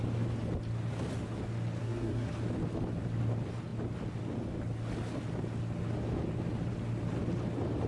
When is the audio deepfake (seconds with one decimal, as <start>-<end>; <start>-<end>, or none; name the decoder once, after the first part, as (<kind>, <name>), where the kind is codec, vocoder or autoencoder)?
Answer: 1.8-2.3 (codec, SNAC)